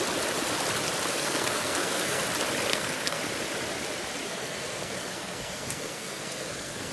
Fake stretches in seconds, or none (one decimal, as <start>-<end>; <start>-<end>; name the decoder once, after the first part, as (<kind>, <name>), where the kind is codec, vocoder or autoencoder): 1.1-2.2 (codec, SNAC); 2.7-3.2; 4.3-6.9